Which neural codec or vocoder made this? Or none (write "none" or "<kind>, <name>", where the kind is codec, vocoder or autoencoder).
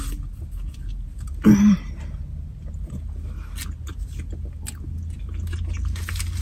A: none